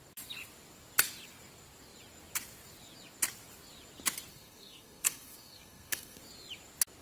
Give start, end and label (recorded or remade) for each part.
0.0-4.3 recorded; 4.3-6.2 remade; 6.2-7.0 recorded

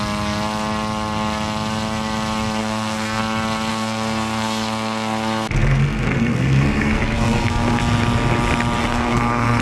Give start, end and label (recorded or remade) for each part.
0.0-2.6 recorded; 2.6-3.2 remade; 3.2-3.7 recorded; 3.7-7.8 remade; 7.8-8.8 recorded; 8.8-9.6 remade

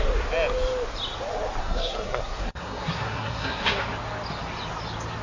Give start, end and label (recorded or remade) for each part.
0.0-1.6 recorded; 1.6-3.8 remade; 3.8-5.2 recorded